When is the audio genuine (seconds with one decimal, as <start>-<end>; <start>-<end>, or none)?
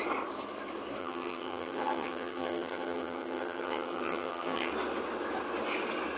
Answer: 0.0-1.0; 4.7-6.2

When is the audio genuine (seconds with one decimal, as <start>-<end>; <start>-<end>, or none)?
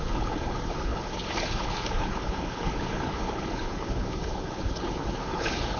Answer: none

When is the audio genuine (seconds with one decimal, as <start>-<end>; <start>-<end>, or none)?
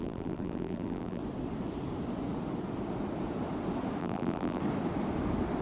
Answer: 1.2-4.0; 4.6-5.6